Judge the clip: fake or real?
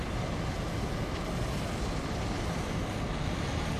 real